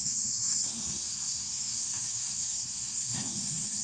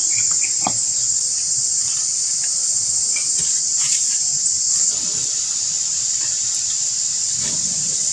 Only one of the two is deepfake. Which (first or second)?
first